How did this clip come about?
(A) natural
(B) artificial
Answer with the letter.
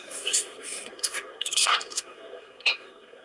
B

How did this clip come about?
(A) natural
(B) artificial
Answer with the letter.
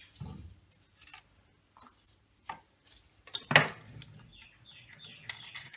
A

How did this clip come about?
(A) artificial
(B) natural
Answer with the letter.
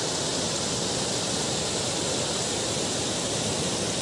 A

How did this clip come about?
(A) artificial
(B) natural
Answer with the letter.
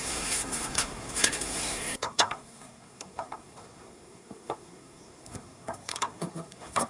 A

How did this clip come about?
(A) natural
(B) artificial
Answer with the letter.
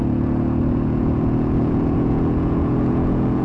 B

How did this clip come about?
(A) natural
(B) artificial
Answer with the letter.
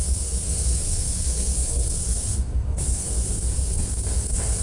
B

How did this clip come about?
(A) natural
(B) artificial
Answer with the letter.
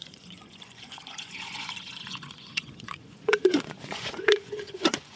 B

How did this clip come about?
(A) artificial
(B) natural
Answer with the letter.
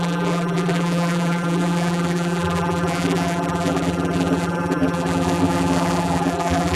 A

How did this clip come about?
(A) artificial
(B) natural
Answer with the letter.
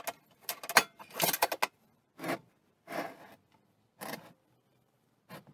B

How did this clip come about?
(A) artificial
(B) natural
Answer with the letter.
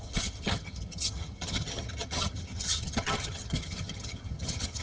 A